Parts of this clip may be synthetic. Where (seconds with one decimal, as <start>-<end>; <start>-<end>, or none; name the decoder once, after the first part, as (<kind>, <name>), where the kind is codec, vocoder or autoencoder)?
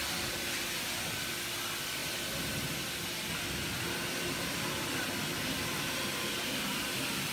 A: none